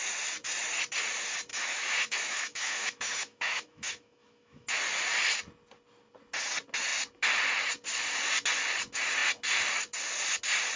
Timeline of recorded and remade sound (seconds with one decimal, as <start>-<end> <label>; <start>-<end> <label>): 0.0-1.5 recorded; 1.5-4.8 remade; 4.8-10.8 recorded